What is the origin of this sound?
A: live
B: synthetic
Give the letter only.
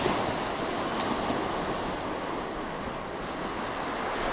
A